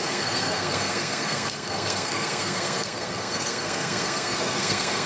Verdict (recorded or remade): remade